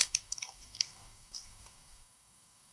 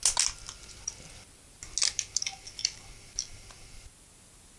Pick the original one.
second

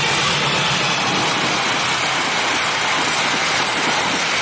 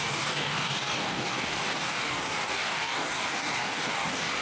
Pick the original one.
first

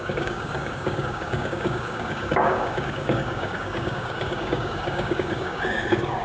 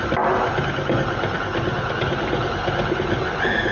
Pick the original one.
second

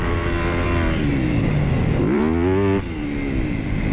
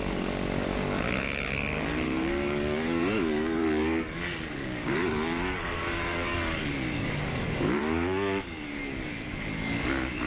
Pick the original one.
first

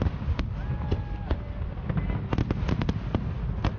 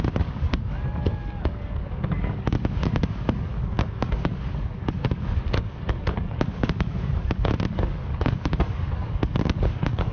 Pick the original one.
first